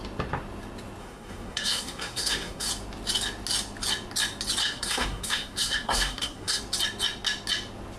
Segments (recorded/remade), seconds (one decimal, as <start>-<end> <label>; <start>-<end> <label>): 0.0-1.0 recorded; 1.0-2.7 remade; 2.7-4.6 recorded; 4.6-6.6 remade; 6.6-8.0 recorded